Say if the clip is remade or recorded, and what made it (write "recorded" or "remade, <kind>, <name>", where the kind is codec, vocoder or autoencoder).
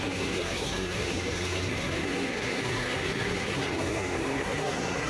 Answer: remade, codec, SNAC